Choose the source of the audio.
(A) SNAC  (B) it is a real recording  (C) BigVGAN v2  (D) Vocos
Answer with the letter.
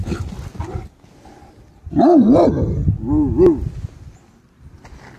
B